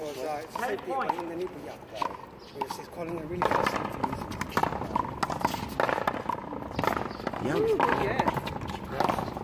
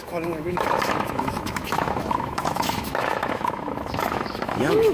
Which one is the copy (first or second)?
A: second